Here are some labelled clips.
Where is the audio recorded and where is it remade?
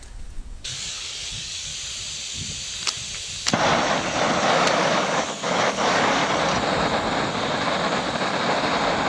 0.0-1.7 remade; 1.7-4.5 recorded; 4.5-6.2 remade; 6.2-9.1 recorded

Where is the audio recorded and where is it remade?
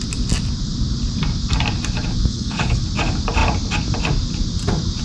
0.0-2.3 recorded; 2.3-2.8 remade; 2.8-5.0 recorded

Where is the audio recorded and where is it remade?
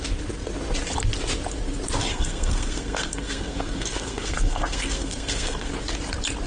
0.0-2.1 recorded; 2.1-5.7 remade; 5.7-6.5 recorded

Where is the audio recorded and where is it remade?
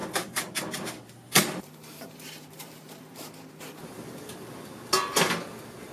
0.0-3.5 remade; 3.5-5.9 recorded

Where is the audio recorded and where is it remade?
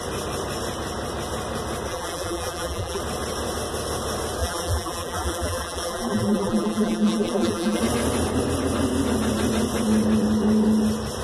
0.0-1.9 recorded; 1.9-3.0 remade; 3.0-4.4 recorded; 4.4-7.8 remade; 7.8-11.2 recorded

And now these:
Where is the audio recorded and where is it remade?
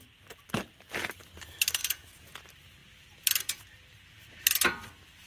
0.0-1.8 recorded; 1.8-2.4 remade; 2.4-5.3 recorded